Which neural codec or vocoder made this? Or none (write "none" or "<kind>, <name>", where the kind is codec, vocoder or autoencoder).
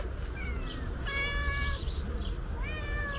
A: none